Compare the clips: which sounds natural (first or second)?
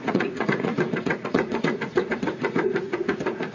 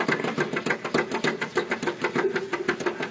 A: second